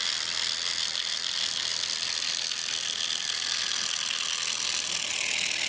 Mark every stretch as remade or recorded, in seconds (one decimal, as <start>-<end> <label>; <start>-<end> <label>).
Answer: 0.0-5.7 recorded